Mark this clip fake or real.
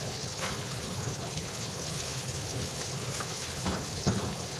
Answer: fake